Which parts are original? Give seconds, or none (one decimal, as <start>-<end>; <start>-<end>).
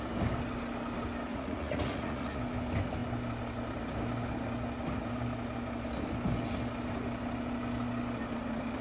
0.0-1.3; 2.4-8.8